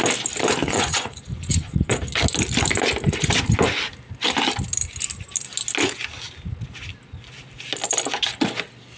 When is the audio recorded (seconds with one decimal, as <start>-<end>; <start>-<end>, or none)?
0.0-0.6; 2.0-9.0